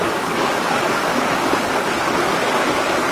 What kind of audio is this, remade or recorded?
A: remade